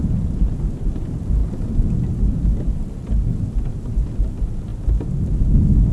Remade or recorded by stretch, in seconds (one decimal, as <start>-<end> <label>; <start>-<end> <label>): 0.0-5.9 recorded